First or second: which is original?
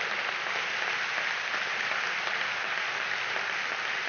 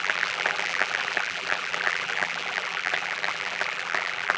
first